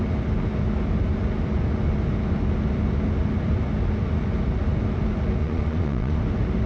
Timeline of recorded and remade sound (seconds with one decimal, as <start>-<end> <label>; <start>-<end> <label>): 0.0-5.4 recorded; 5.4-6.2 remade; 6.2-6.7 recorded